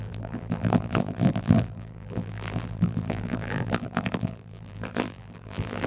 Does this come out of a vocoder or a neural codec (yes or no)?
yes